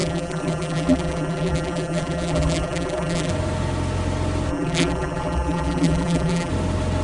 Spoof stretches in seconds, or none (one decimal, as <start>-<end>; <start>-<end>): 0.0-3.3; 4.5-6.5